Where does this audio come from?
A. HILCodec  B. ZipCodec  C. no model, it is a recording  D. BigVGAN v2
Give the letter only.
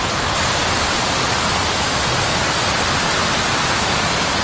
C